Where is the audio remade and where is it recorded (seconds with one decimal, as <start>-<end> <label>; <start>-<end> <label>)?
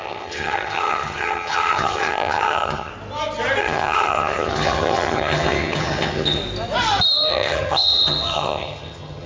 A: 0.0-2.9 remade; 2.9-3.6 recorded; 3.6-6.4 remade; 6.4-7.3 recorded; 7.3-9.3 remade